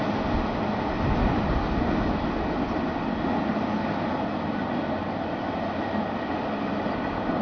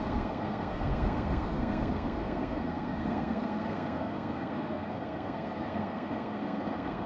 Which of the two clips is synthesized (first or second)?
second